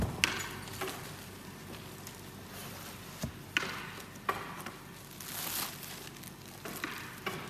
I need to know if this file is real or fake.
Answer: real